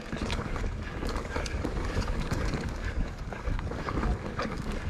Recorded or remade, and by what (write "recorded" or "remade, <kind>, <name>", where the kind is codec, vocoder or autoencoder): remade, codec, DAC